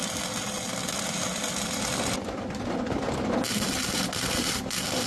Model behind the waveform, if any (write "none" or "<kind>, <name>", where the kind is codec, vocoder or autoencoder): none